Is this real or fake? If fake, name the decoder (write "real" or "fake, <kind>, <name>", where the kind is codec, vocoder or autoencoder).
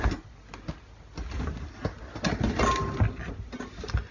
real